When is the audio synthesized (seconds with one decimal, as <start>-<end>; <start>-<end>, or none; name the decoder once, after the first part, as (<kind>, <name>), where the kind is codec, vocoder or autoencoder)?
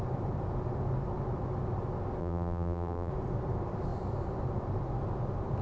2.2-3.1 (vocoder, BigVGAN v2)